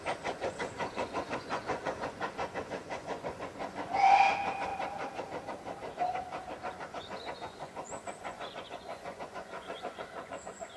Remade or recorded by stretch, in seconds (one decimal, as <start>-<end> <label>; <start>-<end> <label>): 0.0-4.7 remade; 4.7-6.9 recorded; 6.9-10.8 remade